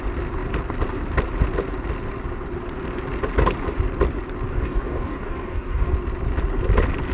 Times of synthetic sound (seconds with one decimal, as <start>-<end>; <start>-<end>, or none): 4.5-5.9